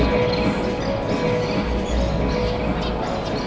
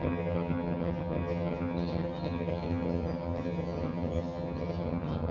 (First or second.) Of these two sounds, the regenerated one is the second